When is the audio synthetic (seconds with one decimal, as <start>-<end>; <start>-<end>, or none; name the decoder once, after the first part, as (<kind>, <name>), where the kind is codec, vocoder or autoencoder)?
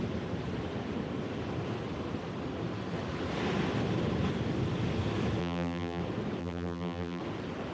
5.4-6.0 (vocoder, BigVGAN v2); 6.4-7.2